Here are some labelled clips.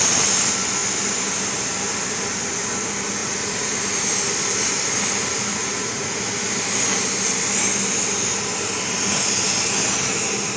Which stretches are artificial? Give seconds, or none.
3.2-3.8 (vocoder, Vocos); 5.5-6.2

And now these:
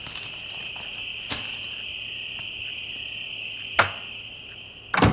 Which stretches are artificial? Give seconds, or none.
none

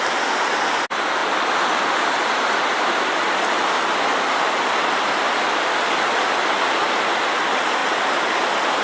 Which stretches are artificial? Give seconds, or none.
none

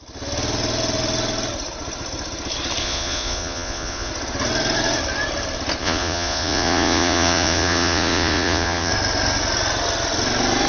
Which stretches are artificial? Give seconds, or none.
2.8-4.1 (vocoder, Vocos); 5.8-8.9